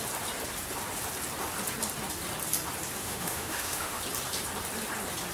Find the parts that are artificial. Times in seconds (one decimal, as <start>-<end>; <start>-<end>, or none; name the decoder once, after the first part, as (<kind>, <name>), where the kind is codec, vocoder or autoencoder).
3.0-4.0 (autoencoder, DAC-VAE)